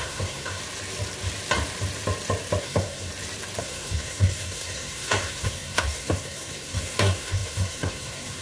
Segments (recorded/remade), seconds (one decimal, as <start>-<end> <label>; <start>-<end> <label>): 0.0-0.6 remade; 0.6-2.6 recorded; 2.6-3.1 remade; 3.1-3.6 recorded; 3.6-8.4 remade